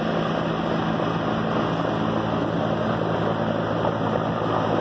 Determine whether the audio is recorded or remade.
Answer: recorded